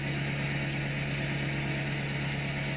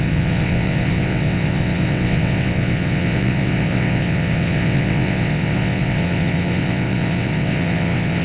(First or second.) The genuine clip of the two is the first